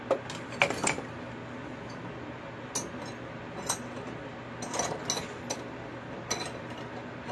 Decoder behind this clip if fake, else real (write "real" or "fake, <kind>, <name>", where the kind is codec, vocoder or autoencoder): real